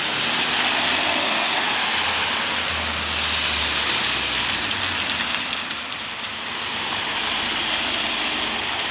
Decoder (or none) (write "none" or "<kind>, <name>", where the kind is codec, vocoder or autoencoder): none